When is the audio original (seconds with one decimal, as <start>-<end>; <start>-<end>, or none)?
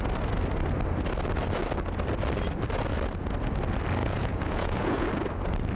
0.0-4.0; 5.1-5.8